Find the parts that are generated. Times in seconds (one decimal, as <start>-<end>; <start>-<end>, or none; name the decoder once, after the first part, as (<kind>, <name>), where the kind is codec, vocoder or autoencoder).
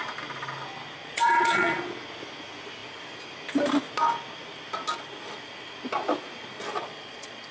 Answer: 1.0-1.8 (vocoder, Vocos); 6.8-7.5